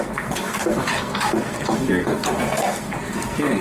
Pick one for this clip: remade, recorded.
remade